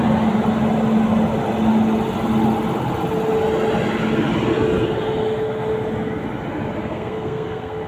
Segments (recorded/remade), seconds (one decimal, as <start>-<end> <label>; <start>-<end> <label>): 0.0-6.8 recorded; 6.8-7.9 remade

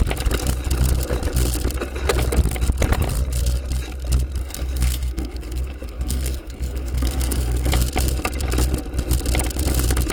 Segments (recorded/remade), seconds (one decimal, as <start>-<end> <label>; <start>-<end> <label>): 0.0-4.4 recorded; 4.4-7.7 remade; 7.7-10.1 recorded

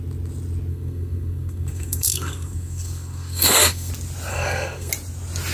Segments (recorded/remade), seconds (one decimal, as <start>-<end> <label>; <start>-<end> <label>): 0.0-0.7 recorded; 0.7-3.9 remade; 3.9-4.3 recorded; 4.3-4.9 remade; 4.9-5.5 recorded

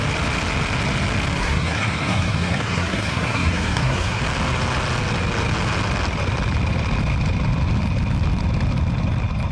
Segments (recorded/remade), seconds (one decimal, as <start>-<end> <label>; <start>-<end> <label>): 0.0-1.4 recorded; 1.4-4.2 remade; 4.2-9.5 recorded

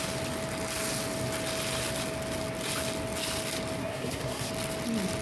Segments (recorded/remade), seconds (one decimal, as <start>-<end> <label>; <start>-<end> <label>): 0.0-3.8 recorded; 3.8-4.5 remade; 4.5-5.2 recorded

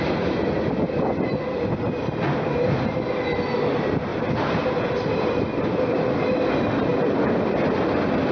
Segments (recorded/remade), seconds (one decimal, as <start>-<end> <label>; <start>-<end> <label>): 0.0-8.3 recorded

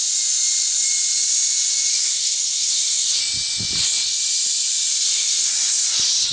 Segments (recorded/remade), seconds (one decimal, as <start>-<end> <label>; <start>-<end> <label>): 0.0-1.9 recorded; 1.9-3.2 remade; 3.2-4.9 recorded; 4.9-5.5 remade; 5.5-6.3 recorded

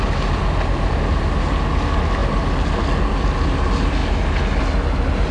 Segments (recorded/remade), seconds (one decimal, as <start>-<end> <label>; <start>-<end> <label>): 0.0-5.3 recorded